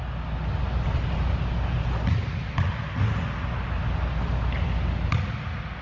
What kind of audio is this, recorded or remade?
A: recorded